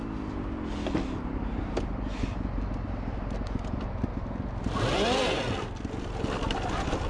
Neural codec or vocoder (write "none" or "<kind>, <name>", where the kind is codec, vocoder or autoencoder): none